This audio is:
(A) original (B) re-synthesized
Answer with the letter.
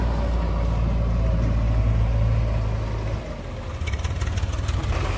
A